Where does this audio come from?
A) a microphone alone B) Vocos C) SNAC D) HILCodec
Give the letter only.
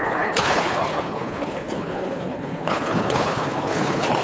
D